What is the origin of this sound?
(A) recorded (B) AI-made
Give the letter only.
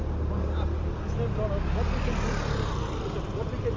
A